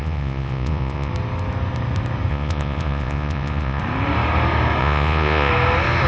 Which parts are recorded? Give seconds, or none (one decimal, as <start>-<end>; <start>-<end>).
1.1-2.3; 3.8-4.8; 5.5-6.1